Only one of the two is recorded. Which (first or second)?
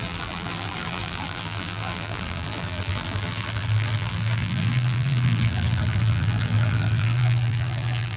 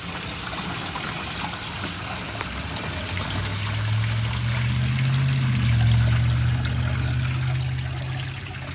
second